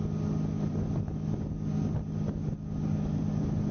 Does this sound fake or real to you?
real